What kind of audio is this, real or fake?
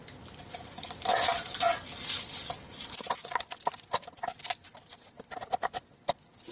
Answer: fake